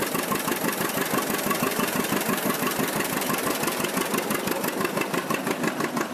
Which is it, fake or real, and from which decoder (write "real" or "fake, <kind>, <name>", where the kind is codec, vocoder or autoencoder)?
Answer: real